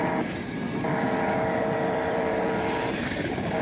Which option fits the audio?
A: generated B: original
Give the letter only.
A